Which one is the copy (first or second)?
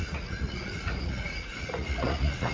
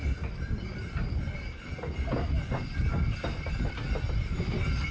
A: first